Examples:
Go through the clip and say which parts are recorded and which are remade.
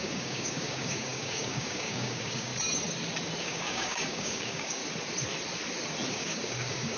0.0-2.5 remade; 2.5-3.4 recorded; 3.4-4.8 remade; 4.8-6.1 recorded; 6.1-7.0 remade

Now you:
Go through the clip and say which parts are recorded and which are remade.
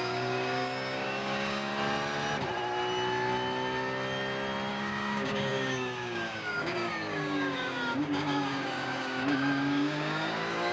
0.0-1.7 remade; 1.7-4.7 recorded; 4.7-10.7 remade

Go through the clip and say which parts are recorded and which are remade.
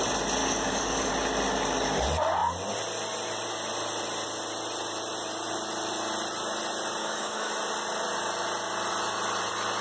0.0-0.4 recorded; 0.4-1.1 remade; 1.1-7.0 recorded; 7.0-7.5 remade; 7.5-9.8 recorded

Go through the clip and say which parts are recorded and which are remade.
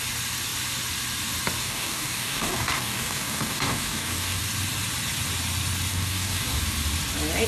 0.0-1.6 recorded; 1.6-4.4 remade; 4.4-5.9 recorded; 5.9-6.6 remade; 6.6-7.5 recorded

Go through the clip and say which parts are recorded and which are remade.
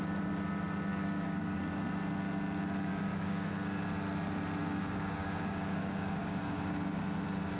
0.0-0.9 recorded; 0.9-1.6 remade; 1.6-2.9 recorded; 2.9-3.5 remade; 3.5-4.6 recorded; 4.6-6.7 remade; 6.7-7.6 recorded